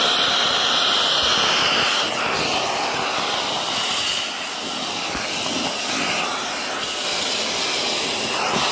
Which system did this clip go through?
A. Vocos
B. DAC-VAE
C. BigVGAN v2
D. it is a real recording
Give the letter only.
D